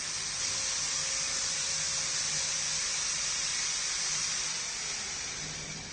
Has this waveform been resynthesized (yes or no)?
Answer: no